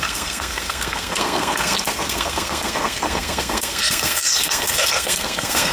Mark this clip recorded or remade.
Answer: remade